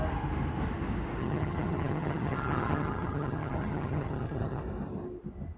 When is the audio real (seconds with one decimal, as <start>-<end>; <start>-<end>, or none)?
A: 0.0-1.2; 4.6-5.6